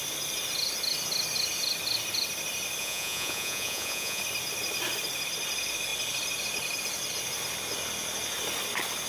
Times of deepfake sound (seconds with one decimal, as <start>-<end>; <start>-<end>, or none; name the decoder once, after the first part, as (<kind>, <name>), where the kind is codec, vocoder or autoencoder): 2.8-4.2 (vocoder, Vocos)